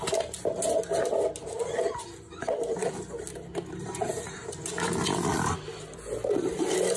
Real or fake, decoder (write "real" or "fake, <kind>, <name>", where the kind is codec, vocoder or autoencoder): real